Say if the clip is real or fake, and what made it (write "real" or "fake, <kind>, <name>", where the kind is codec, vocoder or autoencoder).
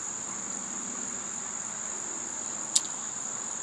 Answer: real